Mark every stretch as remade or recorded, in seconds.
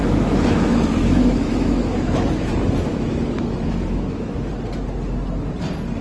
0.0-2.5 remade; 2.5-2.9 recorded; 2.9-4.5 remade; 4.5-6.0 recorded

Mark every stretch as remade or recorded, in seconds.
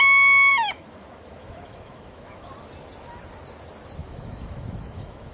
0.0-0.5 recorded; 0.5-2.5 remade; 2.5-4.0 recorded; 4.0-5.3 remade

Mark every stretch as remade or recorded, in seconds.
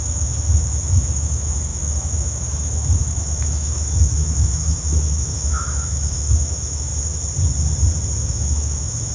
0.0-6.9 remade; 6.9-8.2 recorded; 8.2-9.1 remade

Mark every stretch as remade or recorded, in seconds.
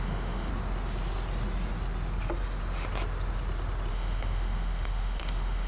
0.0-0.5 remade; 0.5-3.9 recorded; 3.9-5.7 remade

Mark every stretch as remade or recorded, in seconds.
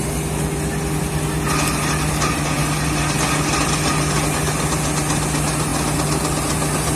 0.0-7.0 recorded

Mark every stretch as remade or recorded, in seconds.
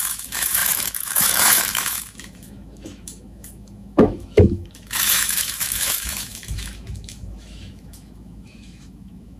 0.0-9.4 remade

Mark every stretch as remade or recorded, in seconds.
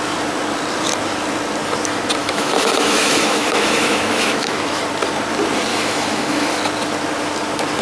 0.0-2.2 recorded; 2.2-4.8 remade; 4.8-5.7 recorded; 5.7-6.5 remade; 6.5-7.8 recorded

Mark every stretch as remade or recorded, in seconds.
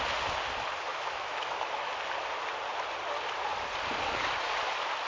0.0-0.9 recorded; 0.9-1.9 remade; 1.9-5.1 recorded